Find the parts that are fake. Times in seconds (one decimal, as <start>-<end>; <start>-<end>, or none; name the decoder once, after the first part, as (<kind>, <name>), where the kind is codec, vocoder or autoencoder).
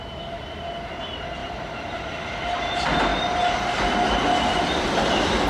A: none